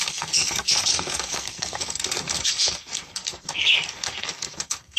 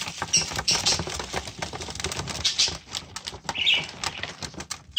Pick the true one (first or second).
second